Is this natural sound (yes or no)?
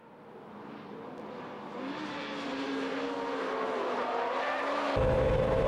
yes